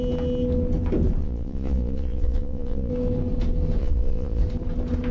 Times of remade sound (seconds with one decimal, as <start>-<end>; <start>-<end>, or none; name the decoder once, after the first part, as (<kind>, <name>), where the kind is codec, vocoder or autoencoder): 1.2-2.9 (vocoder, Vocos); 3.8-4.4